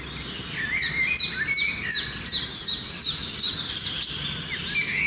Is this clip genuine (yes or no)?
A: yes